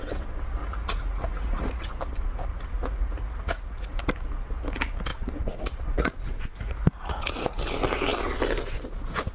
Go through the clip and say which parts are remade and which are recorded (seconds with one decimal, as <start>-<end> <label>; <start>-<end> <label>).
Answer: 0.0-0.6 recorded; 0.6-2.0 remade; 2.0-2.5 recorded; 2.5-4.0 remade; 4.0-5.1 recorded; 5.1-7.6 remade; 7.6-9.3 recorded